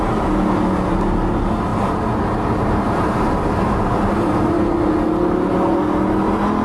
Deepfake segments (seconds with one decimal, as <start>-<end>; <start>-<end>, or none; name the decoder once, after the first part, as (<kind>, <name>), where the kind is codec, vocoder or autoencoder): none

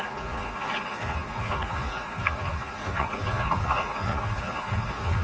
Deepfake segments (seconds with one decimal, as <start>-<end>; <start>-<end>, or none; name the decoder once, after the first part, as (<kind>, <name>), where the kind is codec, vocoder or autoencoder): 0.0-5.2 (vocoder, Vocos)